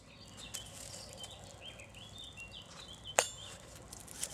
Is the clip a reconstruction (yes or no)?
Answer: no